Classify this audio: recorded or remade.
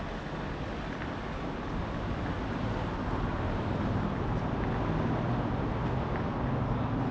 recorded